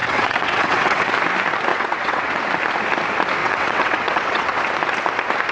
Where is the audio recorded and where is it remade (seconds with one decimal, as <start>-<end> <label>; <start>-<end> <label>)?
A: 0.0-1.1 remade; 1.1-1.7 recorded; 1.7-2.4 remade; 2.4-3.4 recorded; 3.4-4.6 remade; 4.6-5.5 recorded